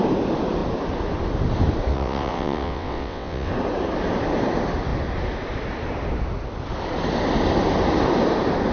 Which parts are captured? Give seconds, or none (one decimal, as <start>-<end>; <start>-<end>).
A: 0.0-1.9; 3.5-8.7